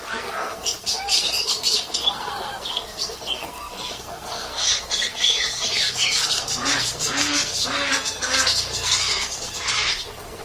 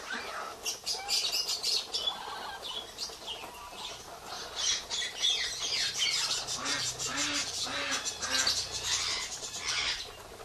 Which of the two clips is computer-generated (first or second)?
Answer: first